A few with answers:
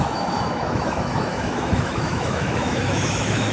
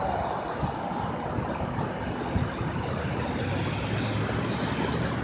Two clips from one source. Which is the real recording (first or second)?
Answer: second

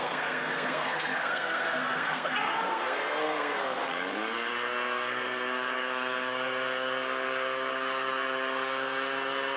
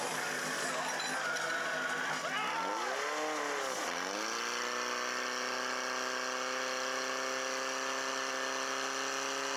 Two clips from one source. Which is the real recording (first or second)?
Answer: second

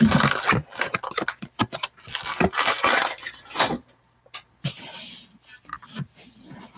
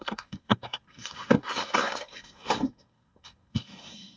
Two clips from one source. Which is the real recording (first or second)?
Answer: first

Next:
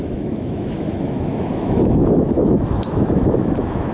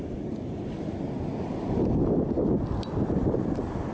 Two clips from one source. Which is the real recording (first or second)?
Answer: second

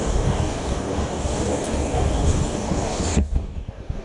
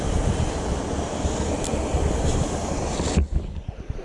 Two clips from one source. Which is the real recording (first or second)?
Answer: second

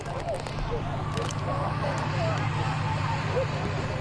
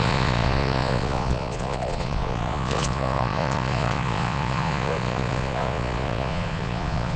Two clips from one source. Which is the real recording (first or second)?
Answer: first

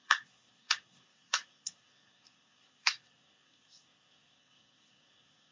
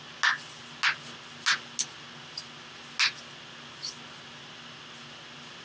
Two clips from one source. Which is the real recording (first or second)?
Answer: second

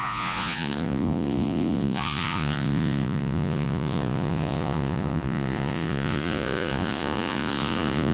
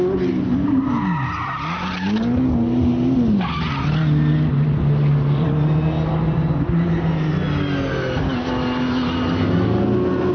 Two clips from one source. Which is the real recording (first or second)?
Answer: second